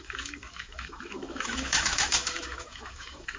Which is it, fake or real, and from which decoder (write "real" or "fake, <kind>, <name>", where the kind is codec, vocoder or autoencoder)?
fake, autoencoder, DAC-VAE